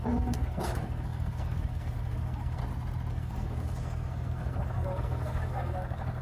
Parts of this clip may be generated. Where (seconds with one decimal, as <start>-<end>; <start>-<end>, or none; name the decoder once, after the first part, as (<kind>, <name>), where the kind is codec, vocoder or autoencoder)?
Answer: 0.0-2.6 (codec, SNAC); 3.1-6.2